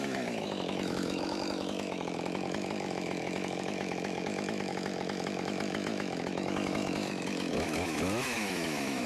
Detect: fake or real fake